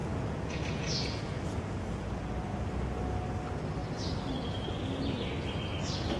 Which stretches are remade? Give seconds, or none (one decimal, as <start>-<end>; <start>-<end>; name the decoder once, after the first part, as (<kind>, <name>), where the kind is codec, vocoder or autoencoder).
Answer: 0.0-1.8 (vocoder, Vocos)